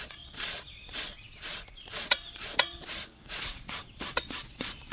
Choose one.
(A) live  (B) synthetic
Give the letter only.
B